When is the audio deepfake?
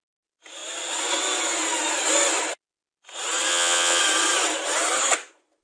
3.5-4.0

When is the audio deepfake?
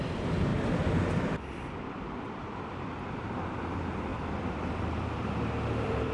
0.5-3.2; 4.1-6.1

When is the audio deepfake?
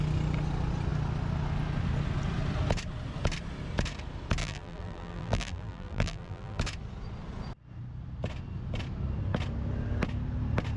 4.4-6.6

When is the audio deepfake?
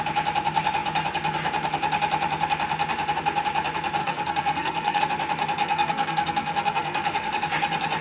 4.0-5.0; 5.6-7.3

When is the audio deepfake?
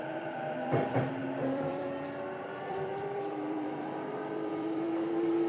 0.0-5.5